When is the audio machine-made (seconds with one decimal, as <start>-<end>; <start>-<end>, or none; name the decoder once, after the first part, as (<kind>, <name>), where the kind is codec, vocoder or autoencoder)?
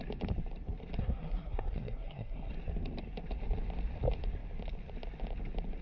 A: 1.0-2.5 (codec, SNAC)